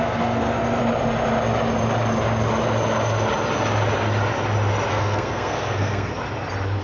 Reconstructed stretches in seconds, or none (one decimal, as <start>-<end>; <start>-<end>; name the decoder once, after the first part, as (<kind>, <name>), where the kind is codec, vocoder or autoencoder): 0.0-0.8 (codec, SNAC); 4.9-6.1